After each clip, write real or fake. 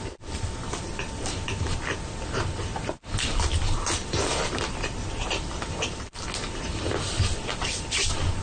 real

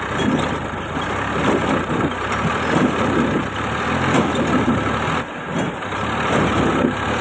real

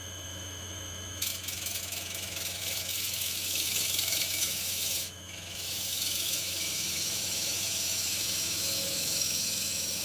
fake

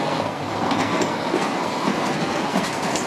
fake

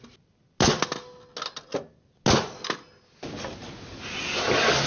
real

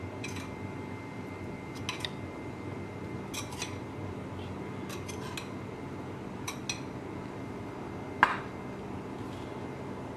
real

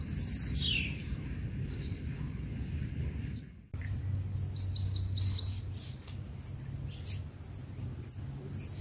real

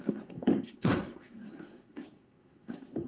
fake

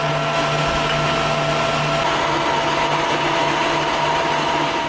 real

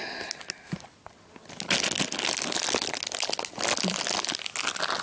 real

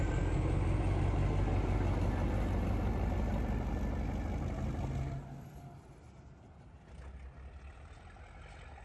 real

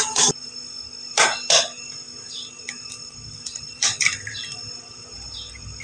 fake